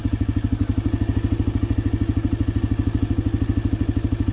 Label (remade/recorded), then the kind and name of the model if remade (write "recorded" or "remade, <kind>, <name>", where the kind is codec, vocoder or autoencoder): recorded